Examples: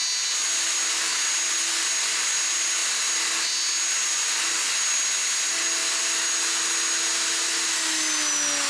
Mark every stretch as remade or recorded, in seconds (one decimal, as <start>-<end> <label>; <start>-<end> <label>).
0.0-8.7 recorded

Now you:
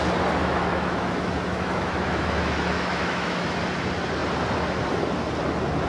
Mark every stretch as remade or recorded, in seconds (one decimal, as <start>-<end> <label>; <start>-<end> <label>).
0.0-0.4 recorded; 0.4-3.6 remade; 3.6-5.9 recorded

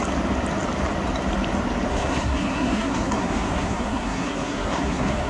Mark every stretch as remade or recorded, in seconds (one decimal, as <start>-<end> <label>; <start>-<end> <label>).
0.0-1.9 recorded; 1.9-5.3 remade